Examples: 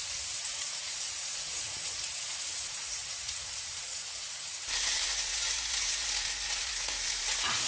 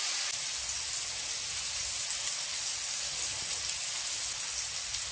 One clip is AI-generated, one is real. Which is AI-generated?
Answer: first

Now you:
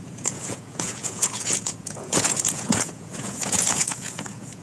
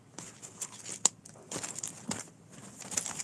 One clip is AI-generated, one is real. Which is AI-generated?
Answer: first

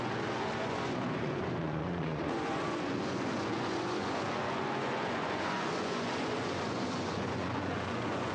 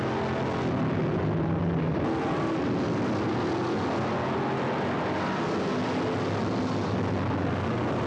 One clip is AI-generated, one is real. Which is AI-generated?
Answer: first